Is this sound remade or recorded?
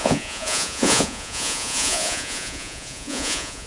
remade